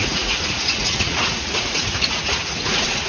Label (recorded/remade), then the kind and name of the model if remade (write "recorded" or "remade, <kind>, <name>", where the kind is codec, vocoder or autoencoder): remade, vocoder, Vocos